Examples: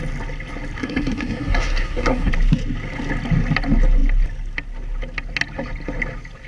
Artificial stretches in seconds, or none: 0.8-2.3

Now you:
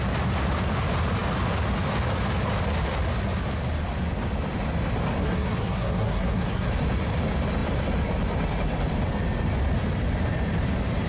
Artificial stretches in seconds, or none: 5.2-6.7

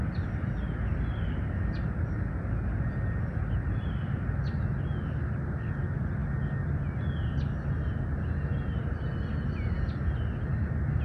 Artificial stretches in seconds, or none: none

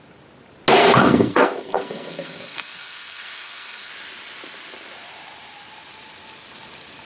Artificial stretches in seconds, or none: 0.8-3.9

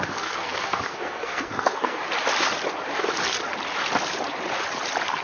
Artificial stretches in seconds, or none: 0.0-2.0

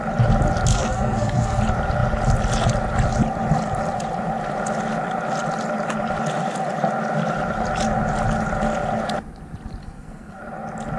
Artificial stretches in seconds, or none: 0.7-1.6; 9.8-10.4